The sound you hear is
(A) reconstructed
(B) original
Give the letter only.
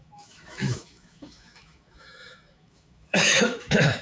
A